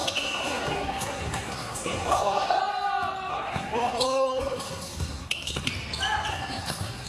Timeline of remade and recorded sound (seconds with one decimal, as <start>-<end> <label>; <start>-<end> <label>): 0.0-2.6 remade; 2.6-3.3 recorded; 3.3-5.7 remade; 5.7-6.3 recorded; 6.3-7.1 remade